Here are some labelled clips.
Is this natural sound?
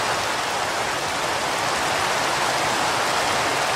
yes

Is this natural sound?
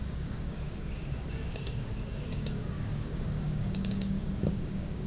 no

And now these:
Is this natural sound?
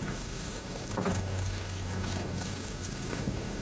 no